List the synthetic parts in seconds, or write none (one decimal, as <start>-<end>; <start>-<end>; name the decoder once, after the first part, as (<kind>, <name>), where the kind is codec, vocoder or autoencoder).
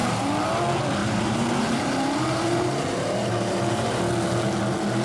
0.0-0.6 (vocoder, BigVGAN v2); 1.0-4.0